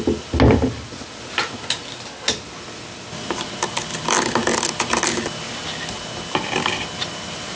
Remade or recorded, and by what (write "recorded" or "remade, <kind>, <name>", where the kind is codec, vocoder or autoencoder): recorded